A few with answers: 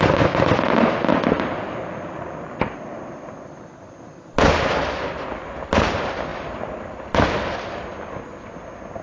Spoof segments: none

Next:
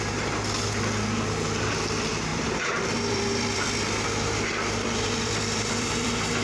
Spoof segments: 2.3-6.4 (vocoder, BigVGAN v2)

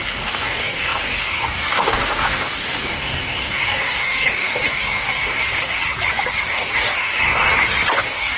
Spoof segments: 0.0-5.8 (codec, DAC); 6.5-7.2; 7.9-8.4

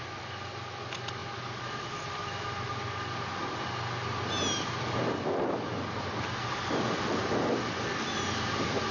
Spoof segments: none

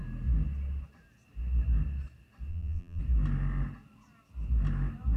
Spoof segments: 2.5-3.0 (vocoder, BigVGAN v2)

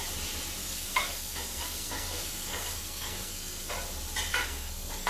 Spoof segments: 0.6-3.7 (codec, SNAC); 4.3-5.1

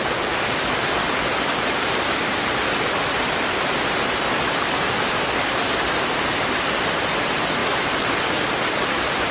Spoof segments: 7.6-9.3 (vocoder, BigVGAN v2)

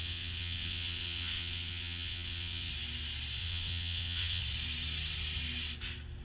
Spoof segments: 0.0-2.7 (vocoder, WaveNeXt); 3.4-4.4